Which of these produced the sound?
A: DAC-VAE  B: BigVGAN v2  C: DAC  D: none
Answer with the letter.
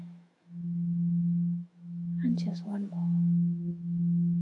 A